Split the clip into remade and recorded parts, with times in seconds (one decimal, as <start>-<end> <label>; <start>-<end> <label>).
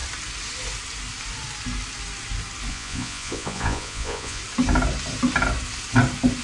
0.0-2.7 recorded; 2.7-4.4 remade; 4.4-6.4 recorded